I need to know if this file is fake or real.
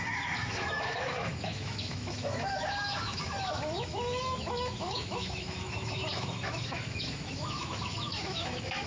fake